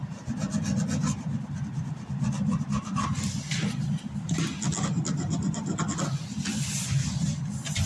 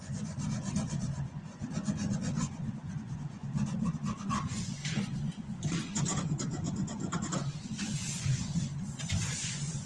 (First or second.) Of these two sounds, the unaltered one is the first